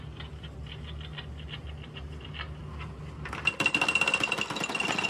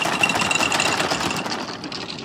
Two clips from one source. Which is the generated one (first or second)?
second